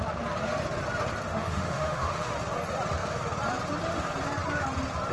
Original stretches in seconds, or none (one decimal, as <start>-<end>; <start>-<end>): 0.0-1.3; 2.3-5.1